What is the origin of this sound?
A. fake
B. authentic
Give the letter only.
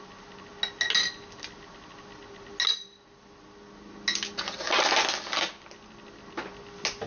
B